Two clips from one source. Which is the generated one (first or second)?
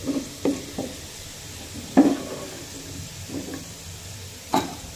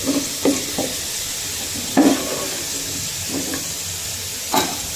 first